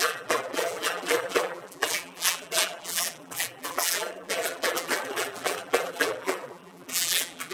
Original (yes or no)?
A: no